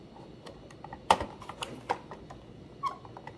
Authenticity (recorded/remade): recorded